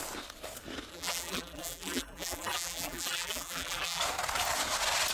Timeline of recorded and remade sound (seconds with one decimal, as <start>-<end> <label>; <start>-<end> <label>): 0.0-0.9 recorded; 0.9-4.0 remade; 4.0-5.1 recorded